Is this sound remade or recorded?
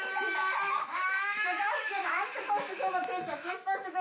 remade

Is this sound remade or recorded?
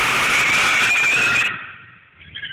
recorded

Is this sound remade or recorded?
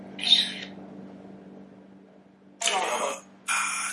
recorded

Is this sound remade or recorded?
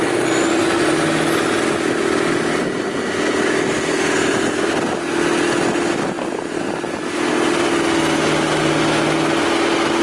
recorded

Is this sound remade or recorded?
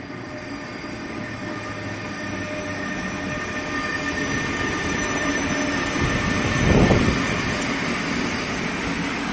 recorded